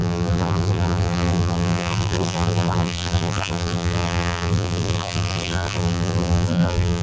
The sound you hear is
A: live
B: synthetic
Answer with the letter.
B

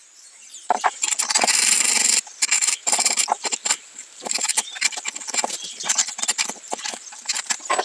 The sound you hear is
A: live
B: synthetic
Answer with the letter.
B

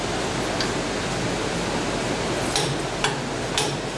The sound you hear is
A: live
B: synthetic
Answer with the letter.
A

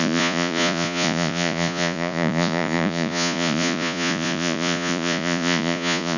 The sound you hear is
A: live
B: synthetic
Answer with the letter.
B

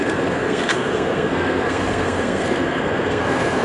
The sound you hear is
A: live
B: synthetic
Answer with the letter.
B